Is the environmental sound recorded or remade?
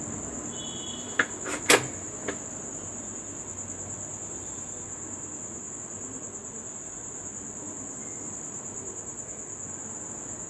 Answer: recorded